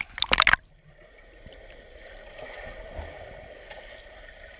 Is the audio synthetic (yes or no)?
no